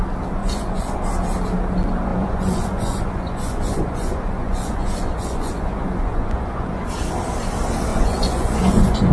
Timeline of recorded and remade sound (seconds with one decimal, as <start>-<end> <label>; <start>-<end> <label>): 0.0-0.4 recorded; 0.4-1.0 remade; 1.0-2.1 recorded; 2.1-6.9 remade; 6.9-7.9 recorded; 7.9-9.1 remade